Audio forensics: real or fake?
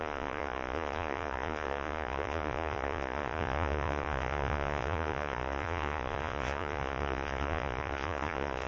fake